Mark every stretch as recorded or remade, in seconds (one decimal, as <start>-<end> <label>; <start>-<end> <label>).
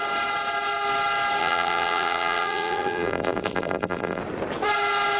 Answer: 0.0-1.4 recorded; 1.4-4.2 remade; 4.2-5.2 recorded